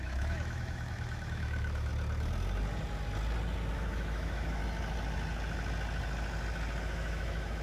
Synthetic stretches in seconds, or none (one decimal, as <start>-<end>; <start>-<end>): 0.0-1.9; 3.7-4.6; 6.8-7.6